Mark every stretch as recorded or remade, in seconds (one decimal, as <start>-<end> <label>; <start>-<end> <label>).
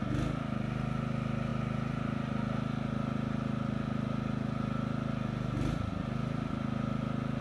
0.0-7.4 recorded